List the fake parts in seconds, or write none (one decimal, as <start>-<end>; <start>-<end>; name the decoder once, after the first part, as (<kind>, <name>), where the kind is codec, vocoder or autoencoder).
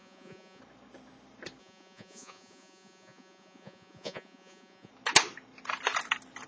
0.0-0.6 (vocoder, Vocos); 1.6-4.9